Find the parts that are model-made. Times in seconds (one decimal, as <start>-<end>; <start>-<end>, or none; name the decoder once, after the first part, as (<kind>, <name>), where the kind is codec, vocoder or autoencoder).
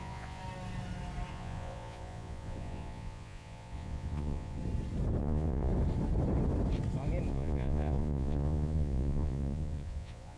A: 0.0-0.4 (vocoder, Vocos); 1.3-4.6; 5.2-5.7; 7.3-10.4